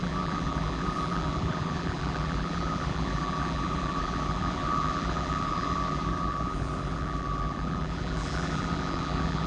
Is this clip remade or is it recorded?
remade